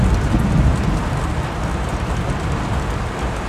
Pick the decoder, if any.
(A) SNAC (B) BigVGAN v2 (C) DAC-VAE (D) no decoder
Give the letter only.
D